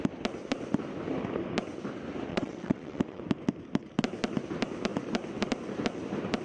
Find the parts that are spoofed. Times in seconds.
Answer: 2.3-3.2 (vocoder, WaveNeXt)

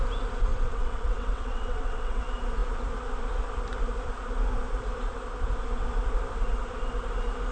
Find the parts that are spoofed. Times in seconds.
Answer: 0.5-2.2 (vocoder, WaveNeXt)

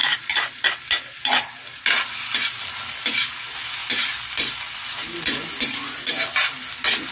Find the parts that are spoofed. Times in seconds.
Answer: none

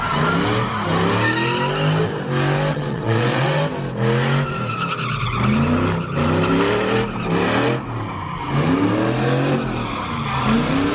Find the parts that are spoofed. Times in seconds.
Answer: 2.7-3.6 (vocoder, WaveNeXt)